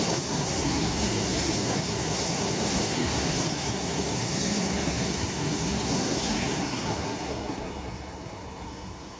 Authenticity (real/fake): fake